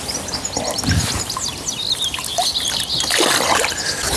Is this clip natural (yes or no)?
yes